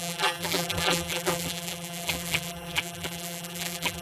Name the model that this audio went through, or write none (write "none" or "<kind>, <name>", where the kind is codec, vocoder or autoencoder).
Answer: vocoder, BigVGAN v2